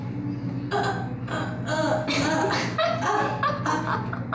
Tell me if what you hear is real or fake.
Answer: real